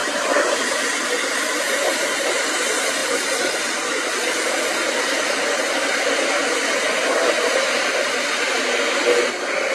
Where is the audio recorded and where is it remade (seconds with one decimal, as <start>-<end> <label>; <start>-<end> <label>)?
0.0-9.7 recorded